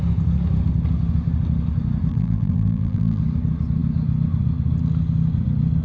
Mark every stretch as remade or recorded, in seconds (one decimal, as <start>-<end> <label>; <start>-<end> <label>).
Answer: 0.0-2.1 recorded; 2.1-3.2 remade; 3.2-5.8 recorded